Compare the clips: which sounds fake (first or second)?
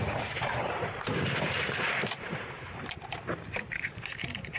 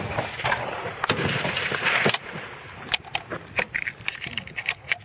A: first